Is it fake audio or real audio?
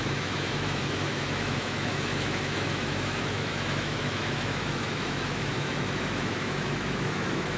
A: fake